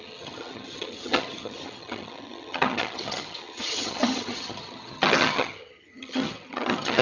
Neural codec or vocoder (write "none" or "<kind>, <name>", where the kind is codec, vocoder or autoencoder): vocoder, HiFi-GAN